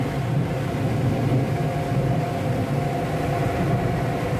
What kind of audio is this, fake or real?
real